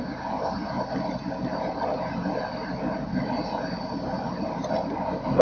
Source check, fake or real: real